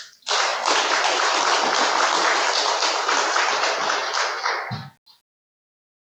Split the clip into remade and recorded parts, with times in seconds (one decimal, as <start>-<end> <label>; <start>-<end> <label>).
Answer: 0.0-0.5 recorded; 0.5-1.4 remade; 1.4-6.1 recorded